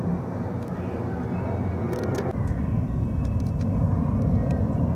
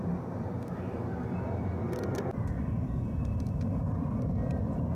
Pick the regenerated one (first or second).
second